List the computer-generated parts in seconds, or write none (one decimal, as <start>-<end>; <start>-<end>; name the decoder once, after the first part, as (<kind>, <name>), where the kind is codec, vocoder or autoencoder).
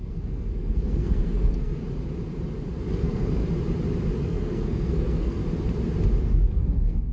0.0-1.8 (codec, SNAC); 2.9-3.4; 4.2-5.4; 6.2-7.1